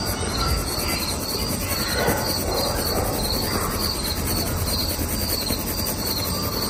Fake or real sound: real